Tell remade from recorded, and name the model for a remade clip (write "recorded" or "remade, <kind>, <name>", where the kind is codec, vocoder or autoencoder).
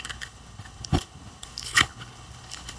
remade, codec, HILCodec